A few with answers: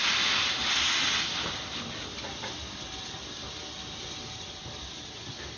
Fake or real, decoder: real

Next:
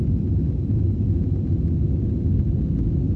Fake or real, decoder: real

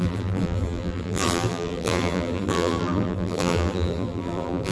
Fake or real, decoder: fake, vocoder, BigVGAN v2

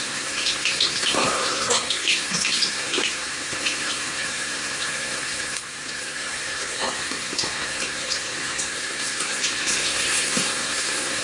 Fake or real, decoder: fake, codec, SNAC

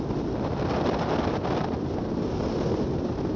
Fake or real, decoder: real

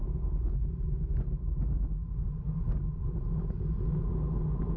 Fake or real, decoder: real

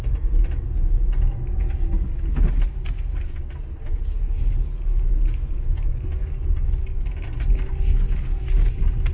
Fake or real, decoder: real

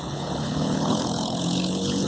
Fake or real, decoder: fake, codec, HILCodec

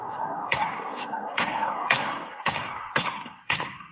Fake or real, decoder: fake, codec, SNAC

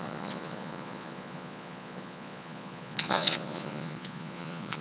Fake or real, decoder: fake, vocoder, Vocos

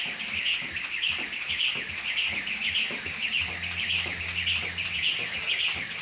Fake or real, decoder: real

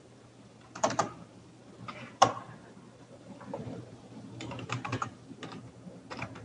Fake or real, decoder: fake, vocoder, BigVGAN v2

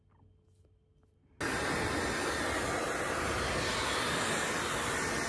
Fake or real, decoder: real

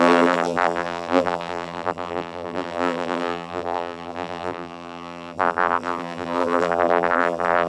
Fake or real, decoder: fake, vocoder, BigVGAN v2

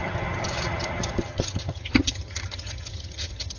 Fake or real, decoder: fake, vocoder, HiFi-GAN